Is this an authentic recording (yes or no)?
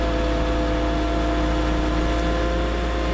yes